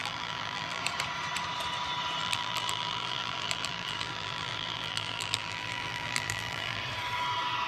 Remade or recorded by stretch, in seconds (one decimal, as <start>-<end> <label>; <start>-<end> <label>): 0.0-0.8 remade; 0.8-2.2 recorded; 2.2-6.8 remade; 6.8-7.7 recorded

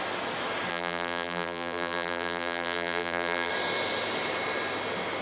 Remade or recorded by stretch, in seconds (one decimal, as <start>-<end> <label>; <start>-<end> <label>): 0.0-0.7 recorded; 0.7-3.5 remade; 3.5-5.2 recorded

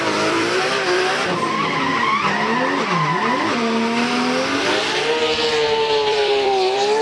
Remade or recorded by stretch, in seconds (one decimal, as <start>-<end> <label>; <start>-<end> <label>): 0.0-1.9 remade; 1.9-6.1 recorded; 6.1-7.0 remade